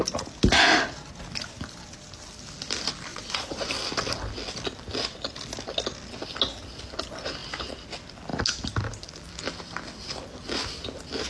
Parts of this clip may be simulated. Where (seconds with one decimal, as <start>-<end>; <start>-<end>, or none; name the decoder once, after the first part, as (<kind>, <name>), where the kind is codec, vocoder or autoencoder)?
3.1-3.7 (vocoder, Vocos)